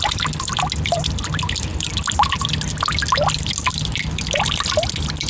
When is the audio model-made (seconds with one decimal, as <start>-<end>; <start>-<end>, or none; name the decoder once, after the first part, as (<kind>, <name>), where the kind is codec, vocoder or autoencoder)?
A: none